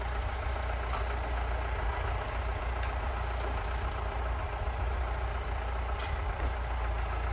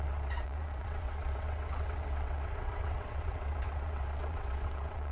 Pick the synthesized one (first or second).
second